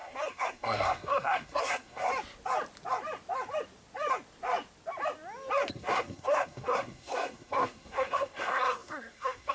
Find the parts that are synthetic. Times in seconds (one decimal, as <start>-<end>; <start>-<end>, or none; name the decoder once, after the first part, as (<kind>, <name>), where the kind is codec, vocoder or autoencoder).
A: 0.0-2.1 (codec, SNAC); 5.7-9.5